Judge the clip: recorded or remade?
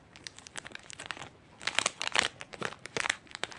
remade